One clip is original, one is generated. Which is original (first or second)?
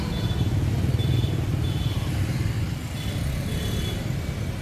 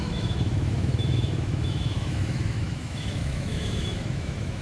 first